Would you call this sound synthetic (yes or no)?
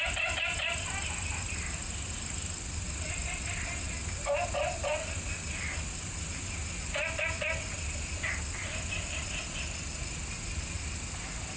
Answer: no